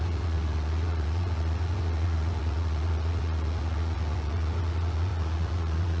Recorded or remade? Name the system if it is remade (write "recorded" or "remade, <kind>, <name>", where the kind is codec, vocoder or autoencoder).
remade, vocoder, Vocos